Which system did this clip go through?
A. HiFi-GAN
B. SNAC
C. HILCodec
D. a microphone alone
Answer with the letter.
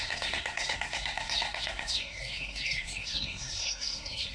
B